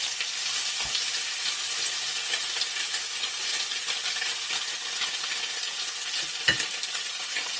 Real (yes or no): yes